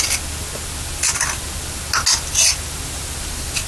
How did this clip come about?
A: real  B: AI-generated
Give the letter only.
A